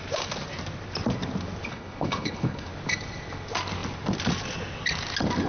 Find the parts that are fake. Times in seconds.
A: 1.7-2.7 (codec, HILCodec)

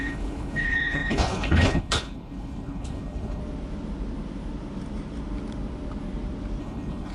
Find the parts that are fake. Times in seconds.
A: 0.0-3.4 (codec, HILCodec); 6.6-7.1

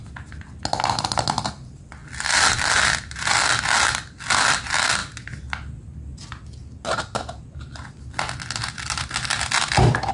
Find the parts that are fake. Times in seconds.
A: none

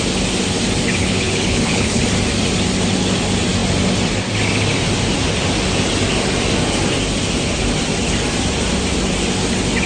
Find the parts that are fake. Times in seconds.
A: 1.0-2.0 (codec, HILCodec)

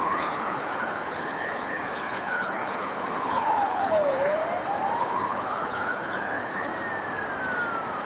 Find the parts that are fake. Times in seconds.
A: 0.0-4.4 (codec, HILCodec); 5.0-6.7